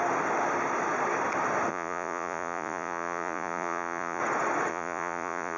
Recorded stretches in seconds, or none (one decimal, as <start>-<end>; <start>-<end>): 0.0-1.7; 4.2-4.7

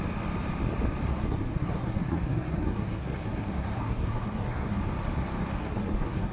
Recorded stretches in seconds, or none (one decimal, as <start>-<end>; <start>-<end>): 0.0-1.1; 4.8-5.6

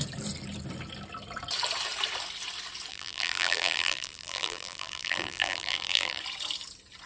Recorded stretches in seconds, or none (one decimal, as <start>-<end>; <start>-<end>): 0.0-2.9; 6.2-7.1

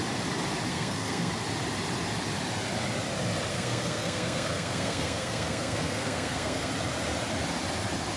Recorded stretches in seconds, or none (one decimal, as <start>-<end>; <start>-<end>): 0.0-0.7; 1.3-3.5; 6.7-8.2